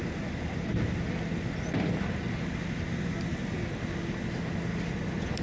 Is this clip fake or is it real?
real